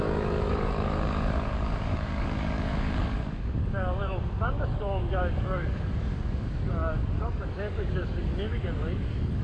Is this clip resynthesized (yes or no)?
yes